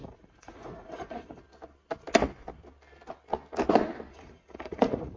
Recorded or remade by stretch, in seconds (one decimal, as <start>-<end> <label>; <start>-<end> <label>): 0.0-1.4 remade; 1.4-4.1 recorded; 4.1-5.2 remade